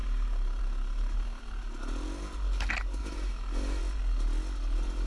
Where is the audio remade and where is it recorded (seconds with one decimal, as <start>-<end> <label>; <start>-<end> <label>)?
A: 0.0-3.0 recorded; 3.0-3.8 remade; 3.8-5.1 recorded